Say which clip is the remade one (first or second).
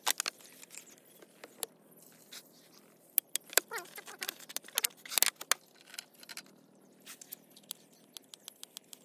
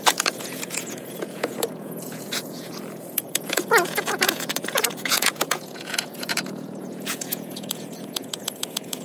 second